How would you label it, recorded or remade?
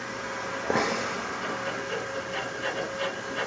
recorded